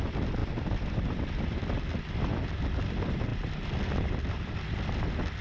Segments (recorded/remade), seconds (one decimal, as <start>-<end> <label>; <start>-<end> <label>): 0.0-0.4 recorded; 0.4-1.2 remade; 1.2-5.4 recorded